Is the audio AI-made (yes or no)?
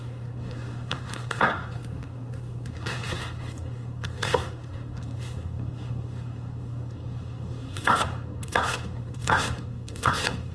yes